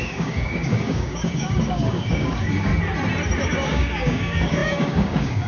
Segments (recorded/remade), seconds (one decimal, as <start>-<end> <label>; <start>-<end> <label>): 0.0-2.7 remade; 2.7-3.4 recorded; 3.4-5.5 remade